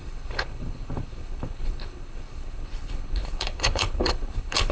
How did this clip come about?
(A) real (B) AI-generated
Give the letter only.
B